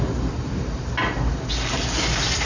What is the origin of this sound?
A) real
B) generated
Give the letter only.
A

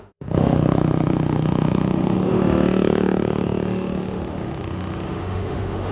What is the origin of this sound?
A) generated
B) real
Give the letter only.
A